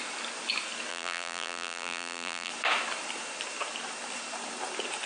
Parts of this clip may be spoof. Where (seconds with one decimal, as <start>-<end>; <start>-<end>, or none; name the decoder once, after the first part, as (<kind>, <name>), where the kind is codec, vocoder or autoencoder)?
0.9-2.5 (vocoder, BigVGAN v2)

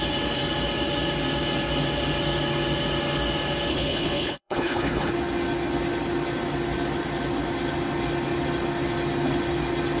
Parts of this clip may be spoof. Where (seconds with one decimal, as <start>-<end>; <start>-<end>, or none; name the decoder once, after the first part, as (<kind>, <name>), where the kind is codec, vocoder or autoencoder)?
3.7-5.1 (codec, HILCodec)

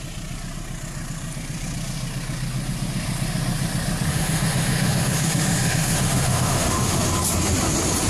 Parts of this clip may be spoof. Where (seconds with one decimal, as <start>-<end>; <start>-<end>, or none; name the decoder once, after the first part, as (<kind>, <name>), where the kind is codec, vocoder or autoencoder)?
4.1-7.1 (autoencoder, DAC-VAE)